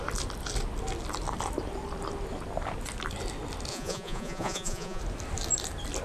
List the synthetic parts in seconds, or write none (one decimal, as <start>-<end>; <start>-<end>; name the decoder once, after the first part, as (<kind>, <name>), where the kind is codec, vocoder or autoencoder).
3.7-5.0 (vocoder, Vocos)